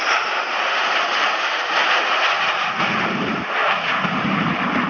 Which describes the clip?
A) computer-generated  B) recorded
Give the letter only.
A